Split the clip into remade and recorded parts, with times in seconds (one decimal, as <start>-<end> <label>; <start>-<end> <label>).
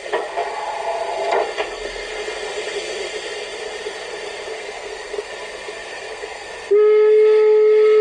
0.0-4.5 recorded; 4.5-5.3 remade; 5.3-5.9 recorded; 5.9-6.5 remade; 6.5-8.0 recorded